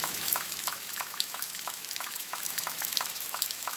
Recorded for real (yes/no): no